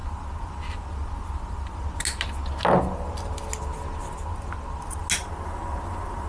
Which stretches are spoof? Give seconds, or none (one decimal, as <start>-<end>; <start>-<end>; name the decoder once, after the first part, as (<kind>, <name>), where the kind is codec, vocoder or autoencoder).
none